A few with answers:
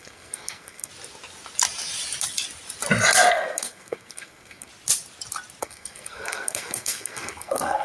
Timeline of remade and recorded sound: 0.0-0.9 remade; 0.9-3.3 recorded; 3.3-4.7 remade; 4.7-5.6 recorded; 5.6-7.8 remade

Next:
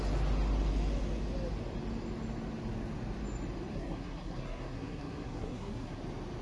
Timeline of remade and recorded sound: 0.0-3.7 recorded; 3.7-6.0 remade; 6.0-6.4 recorded

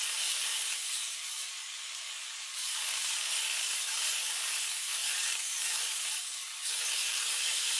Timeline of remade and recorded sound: 0.0-7.8 remade

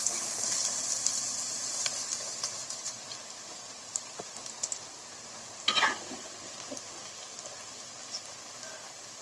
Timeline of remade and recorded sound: 0.0-9.2 recorded

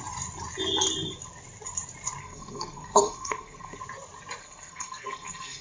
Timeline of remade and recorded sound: 0.0-2.2 recorded; 2.2-3.8 remade; 3.8-4.4 recorded; 4.4-5.6 remade

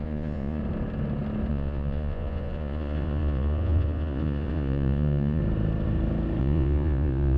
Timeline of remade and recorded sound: 0.0-0.6 remade; 0.6-1.5 recorded; 1.5-5.4 remade; 5.4-6.4 recorded; 6.4-7.4 remade